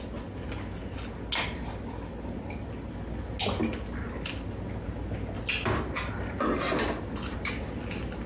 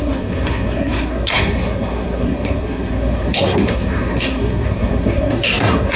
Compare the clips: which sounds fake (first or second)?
second